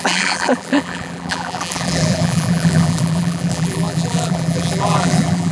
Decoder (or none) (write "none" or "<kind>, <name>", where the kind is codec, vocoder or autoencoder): vocoder, BigVGAN v2